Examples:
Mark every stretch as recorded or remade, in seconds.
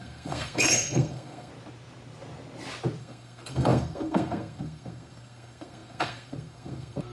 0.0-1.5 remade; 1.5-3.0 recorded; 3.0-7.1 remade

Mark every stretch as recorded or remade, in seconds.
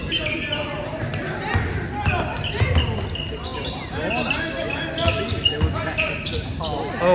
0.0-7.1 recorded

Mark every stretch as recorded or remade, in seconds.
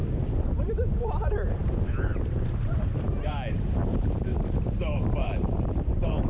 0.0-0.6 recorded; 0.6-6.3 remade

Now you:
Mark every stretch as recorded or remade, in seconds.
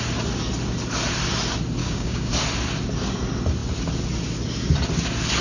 0.0-1.8 recorded; 1.8-2.3 remade; 2.3-5.4 recorded